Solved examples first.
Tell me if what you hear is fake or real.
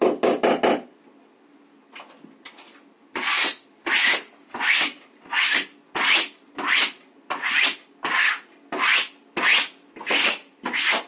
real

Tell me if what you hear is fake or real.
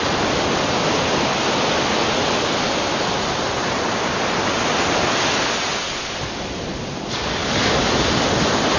real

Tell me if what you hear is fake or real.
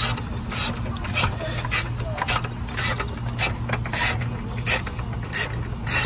real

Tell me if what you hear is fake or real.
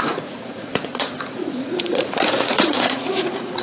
fake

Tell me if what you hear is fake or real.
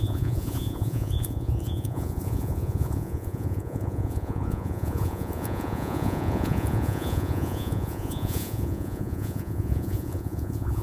fake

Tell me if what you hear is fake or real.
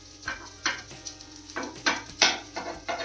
fake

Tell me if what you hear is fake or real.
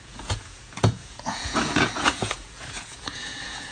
fake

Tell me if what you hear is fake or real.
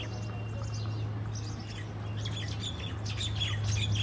real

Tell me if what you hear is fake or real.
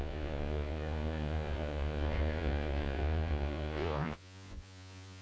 fake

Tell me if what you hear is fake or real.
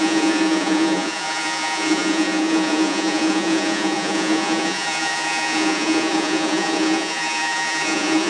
fake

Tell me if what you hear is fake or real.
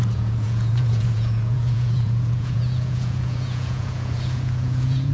fake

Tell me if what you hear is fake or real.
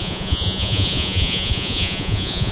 fake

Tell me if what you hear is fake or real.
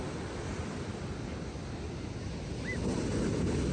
real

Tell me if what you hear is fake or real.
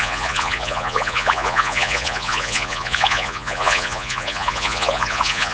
fake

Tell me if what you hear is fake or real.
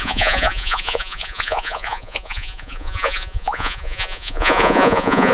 fake